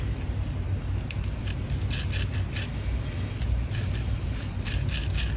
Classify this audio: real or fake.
real